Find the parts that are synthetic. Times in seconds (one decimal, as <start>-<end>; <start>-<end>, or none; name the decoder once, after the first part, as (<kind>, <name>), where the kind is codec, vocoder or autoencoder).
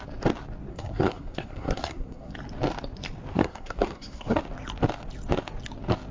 0.7-2.3 (codec, SNAC); 3.3-4.4